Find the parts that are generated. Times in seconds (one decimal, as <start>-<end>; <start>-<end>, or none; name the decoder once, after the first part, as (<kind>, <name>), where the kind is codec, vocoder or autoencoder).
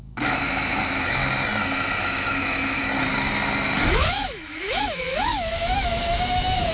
0.0-1.2 (autoencoder, DAC-VAE); 2.0-2.8; 3.9-6.7